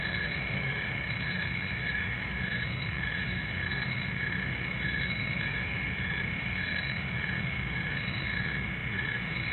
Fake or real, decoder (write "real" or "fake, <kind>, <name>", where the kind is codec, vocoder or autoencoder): fake, autoencoder, DAC-VAE